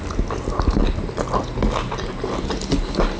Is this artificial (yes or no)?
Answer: no